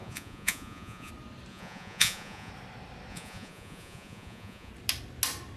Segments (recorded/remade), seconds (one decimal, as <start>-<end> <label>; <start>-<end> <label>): 0.0-1.1 remade; 1.1-1.5 recorded; 1.5-2.5 remade; 2.5-3.1 recorded; 3.1-4.7 remade; 4.7-5.6 recorded